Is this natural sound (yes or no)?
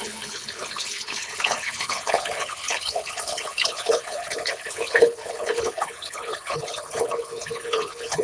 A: no